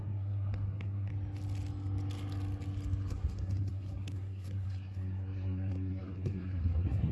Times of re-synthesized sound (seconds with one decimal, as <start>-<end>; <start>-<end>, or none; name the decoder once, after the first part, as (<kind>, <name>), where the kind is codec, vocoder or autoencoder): 0.0-1.1 (codec, SNAC); 3.1-7.1